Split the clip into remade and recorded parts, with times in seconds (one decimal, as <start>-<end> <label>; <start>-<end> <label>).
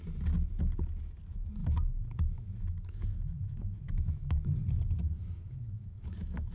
0.0-1.6 recorded; 1.6-4.4 remade; 4.4-5.2 recorded; 5.2-6.5 remade